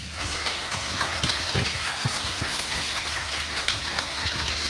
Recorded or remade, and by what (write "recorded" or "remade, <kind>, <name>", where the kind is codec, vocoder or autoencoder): remade, codec, SNAC